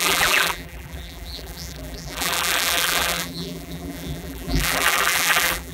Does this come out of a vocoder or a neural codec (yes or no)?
yes